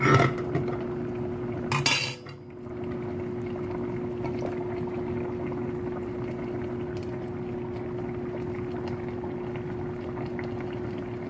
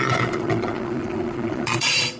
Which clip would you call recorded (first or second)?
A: first